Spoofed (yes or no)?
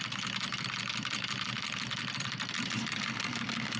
no